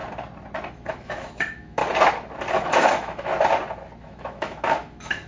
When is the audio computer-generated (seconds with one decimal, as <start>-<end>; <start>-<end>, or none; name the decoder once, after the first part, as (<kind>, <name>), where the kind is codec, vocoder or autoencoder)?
0.7-1.8 (autoencoder, DAC-VAE); 2.5-3.3; 4.0-5.3